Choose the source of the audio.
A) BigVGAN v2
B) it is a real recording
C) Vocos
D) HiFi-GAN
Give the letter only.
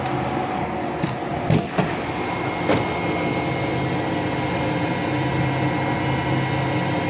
B